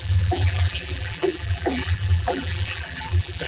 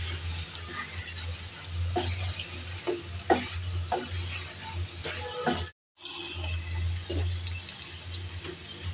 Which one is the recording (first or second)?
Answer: second